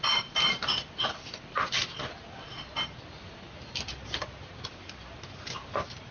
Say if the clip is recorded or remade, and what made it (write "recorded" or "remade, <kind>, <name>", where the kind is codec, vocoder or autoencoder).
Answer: recorded